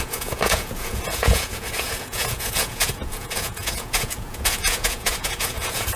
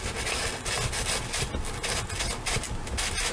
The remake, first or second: first